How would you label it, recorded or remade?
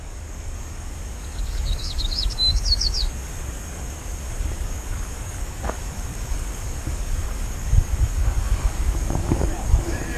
remade